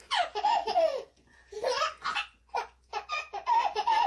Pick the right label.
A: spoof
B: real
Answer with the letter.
A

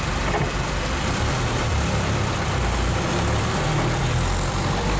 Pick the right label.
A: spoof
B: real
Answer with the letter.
A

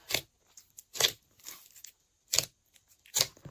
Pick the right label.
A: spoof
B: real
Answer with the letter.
B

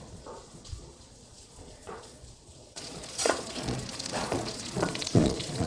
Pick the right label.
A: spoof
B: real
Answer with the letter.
A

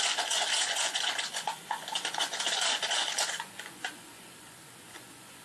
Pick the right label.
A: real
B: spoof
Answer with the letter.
B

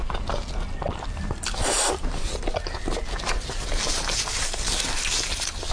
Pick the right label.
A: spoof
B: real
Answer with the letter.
A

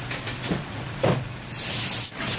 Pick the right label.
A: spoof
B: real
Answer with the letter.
B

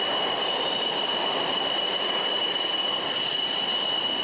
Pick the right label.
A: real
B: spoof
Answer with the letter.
A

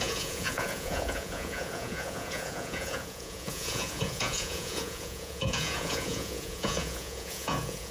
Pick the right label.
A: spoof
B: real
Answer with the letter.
A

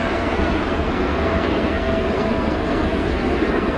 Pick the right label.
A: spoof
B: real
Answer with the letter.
A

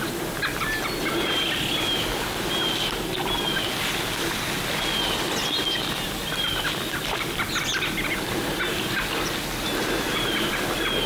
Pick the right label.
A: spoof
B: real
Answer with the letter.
B